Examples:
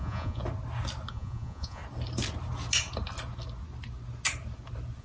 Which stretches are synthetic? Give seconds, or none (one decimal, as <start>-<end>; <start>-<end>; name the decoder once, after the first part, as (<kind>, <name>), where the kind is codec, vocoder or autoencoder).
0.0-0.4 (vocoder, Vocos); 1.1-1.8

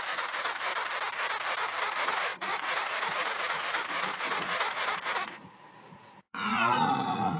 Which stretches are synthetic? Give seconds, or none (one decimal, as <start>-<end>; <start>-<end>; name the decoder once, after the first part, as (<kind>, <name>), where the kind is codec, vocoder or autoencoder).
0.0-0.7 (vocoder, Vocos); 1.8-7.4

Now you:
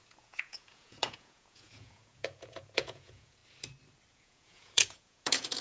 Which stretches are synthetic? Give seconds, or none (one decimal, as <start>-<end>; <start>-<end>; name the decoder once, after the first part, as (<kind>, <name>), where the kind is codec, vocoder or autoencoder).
0.0-3.4 (vocoder, Vocos); 4.1-5.6